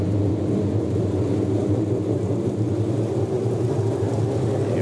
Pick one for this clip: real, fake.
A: real